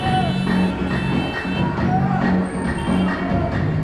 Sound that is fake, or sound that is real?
real